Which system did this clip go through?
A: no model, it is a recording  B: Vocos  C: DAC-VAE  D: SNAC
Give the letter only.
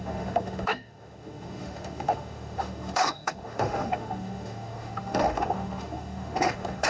C